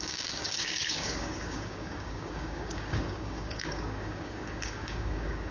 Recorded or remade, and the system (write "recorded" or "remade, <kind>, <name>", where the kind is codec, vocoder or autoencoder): remade, codec, DAC